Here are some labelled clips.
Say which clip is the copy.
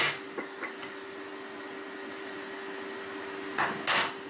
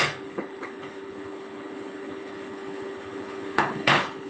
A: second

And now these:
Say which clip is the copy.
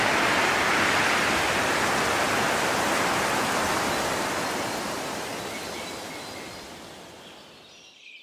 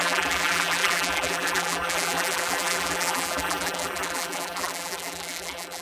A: second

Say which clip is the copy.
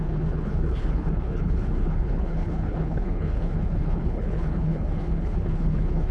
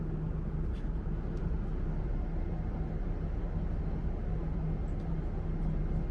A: first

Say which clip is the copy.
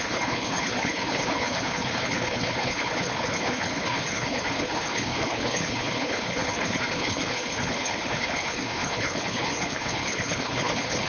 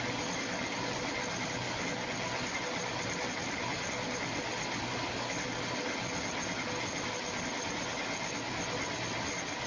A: first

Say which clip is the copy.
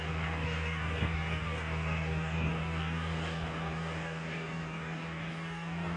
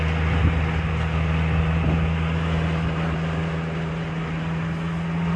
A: first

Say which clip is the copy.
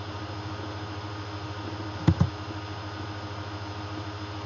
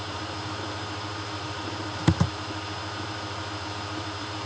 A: second